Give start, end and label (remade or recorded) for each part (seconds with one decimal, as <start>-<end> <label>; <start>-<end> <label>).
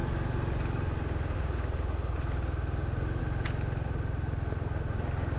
0.0-5.4 recorded